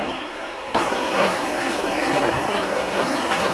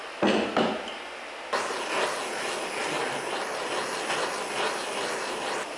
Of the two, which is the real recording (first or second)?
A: second